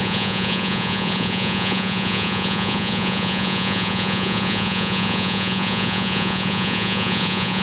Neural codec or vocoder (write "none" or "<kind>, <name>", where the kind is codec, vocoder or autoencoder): vocoder, Vocos